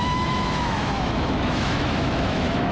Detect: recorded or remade remade